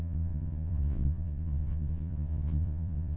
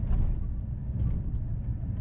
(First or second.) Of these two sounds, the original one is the second